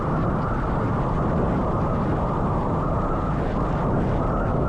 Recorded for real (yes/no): yes